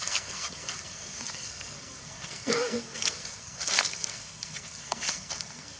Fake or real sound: fake